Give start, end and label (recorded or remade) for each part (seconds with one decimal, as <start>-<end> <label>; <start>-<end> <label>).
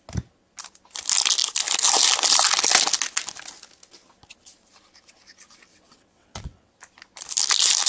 0.0-5.7 recorded; 5.7-6.7 remade; 6.7-7.9 recorded